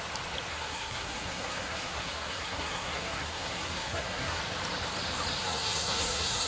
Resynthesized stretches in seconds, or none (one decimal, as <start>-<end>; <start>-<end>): 0.5-4.4; 5.4-6.5